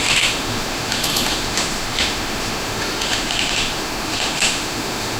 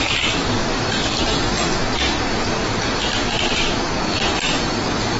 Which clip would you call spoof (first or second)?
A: first